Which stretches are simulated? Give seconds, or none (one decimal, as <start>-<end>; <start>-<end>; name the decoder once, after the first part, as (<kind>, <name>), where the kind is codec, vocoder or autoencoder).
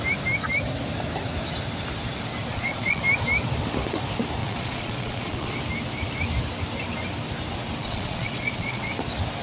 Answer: 2.5-3.0 (vocoder, Vocos); 4.4-5.5; 7.8-8.9